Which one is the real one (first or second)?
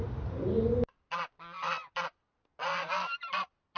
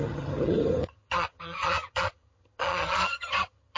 first